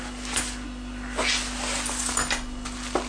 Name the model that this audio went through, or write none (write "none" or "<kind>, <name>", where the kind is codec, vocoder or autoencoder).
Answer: none